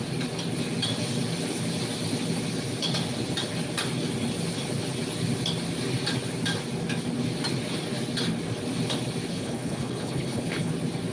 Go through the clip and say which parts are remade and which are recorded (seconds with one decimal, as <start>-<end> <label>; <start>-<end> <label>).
0.0-9.3 recorded; 9.3-10.7 remade; 10.7-11.1 recorded